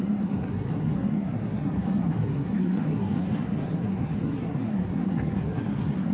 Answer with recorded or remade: remade